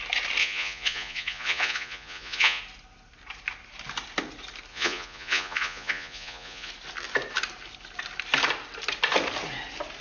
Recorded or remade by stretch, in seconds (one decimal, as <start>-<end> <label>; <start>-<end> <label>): 0.0-0.4 recorded; 0.4-2.6 remade; 2.6-4.7 recorded; 4.7-6.7 remade; 6.7-10.0 recorded